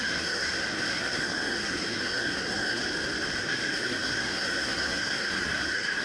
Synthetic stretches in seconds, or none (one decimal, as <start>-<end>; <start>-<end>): 0.0-2.8; 3.4-6.0